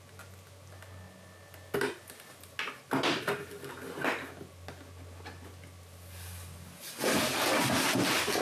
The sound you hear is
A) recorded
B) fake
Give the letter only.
A